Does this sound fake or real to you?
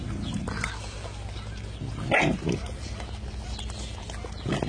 real